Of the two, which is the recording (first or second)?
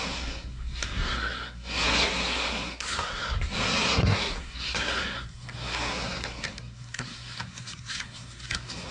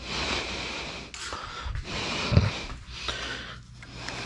second